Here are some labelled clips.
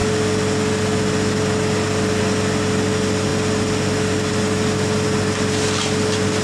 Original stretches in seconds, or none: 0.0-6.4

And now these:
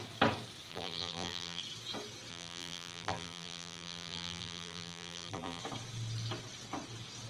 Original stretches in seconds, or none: 0.0-0.7; 1.6-2.3; 5.6-7.3